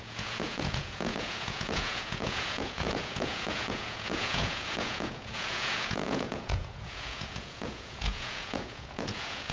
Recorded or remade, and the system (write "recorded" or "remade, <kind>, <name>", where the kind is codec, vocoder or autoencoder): remade, vocoder, Vocos